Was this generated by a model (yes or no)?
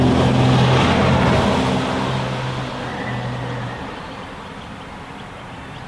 no